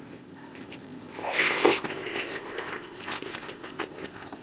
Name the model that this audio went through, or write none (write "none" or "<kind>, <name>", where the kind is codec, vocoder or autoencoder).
codec, ZipCodec